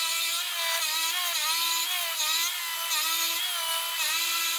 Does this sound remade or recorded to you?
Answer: recorded